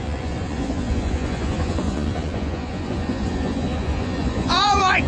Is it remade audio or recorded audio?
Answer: remade